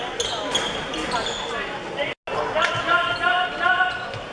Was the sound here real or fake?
real